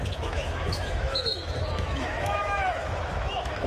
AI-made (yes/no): yes